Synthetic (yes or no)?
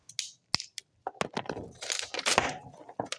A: no